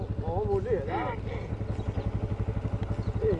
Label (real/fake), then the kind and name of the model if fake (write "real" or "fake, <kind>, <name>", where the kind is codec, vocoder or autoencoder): real